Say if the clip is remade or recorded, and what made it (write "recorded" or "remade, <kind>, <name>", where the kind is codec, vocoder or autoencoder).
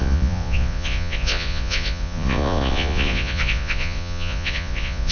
remade, vocoder, Vocos